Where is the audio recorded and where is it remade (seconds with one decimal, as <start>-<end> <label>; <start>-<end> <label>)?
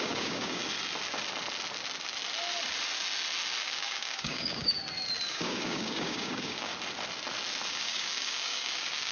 0.0-0.6 remade; 0.6-3.6 recorded; 3.6-4.8 remade; 4.8-5.3 recorded; 5.3-6.7 remade; 6.7-7.7 recorded; 7.7-9.1 remade